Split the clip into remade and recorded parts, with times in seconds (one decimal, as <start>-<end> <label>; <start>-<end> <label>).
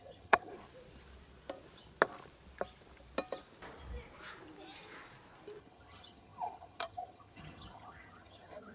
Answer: 0.0-0.5 remade; 0.5-5.6 recorded; 5.6-8.7 remade